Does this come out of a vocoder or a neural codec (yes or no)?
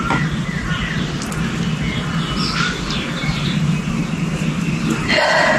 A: no